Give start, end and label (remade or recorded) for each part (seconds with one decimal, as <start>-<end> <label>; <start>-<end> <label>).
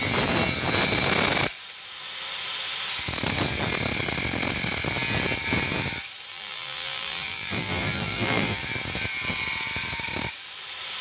0.0-6.3 recorded; 6.3-8.6 remade; 8.6-11.0 recorded